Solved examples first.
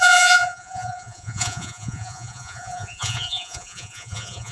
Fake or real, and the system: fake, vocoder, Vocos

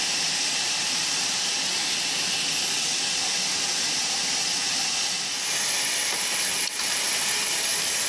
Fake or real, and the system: real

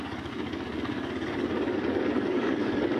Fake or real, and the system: fake, codec, DAC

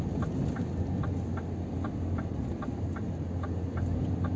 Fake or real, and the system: real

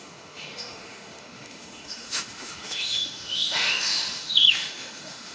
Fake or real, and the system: fake, autoencoder, DAC-VAE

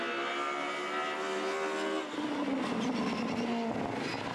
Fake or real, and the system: real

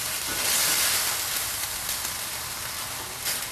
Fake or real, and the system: real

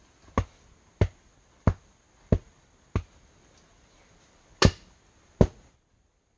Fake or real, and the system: real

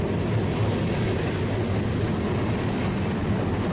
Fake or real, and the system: real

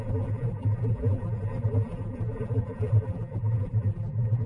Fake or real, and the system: fake, vocoder, BigVGAN v2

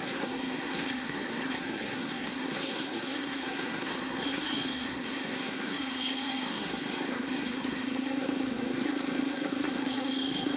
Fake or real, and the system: fake, codec, SNAC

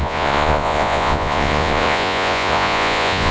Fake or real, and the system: fake, vocoder, Vocos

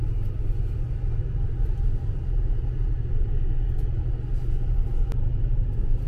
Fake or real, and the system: real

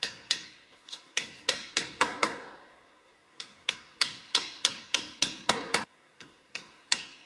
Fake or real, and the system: fake, codec, SNAC